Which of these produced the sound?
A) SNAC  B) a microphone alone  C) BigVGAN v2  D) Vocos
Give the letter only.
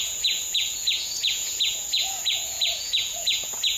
D